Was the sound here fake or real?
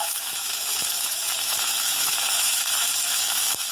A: fake